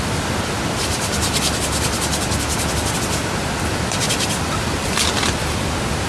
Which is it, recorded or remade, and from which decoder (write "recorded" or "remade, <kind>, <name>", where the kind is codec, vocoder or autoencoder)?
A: recorded